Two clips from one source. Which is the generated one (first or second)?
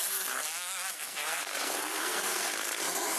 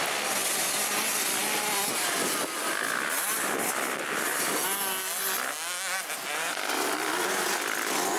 first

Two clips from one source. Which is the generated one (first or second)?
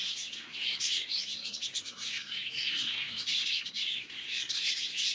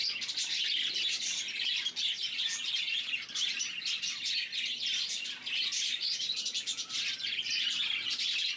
first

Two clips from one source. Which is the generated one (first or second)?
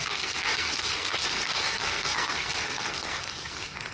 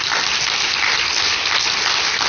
first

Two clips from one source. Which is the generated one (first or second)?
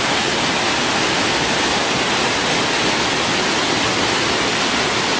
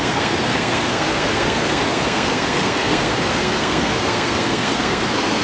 second